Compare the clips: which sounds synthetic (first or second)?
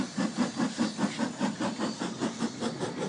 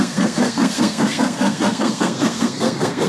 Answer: second